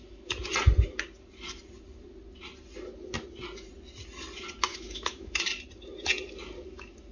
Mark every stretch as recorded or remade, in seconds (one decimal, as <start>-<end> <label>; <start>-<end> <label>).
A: 0.0-4.7 recorded; 4.7-5.4 remade; 5.4-7.1 recorded